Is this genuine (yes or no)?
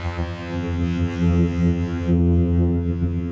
no